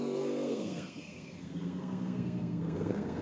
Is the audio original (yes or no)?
no